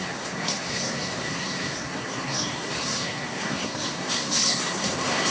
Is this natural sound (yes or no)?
no